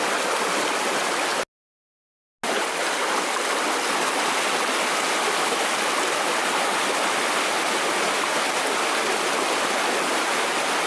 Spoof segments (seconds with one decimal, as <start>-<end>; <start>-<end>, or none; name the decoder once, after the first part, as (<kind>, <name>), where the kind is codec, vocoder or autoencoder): none